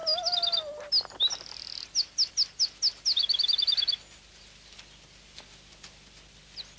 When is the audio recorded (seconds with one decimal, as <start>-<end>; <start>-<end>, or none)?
0.0-6.8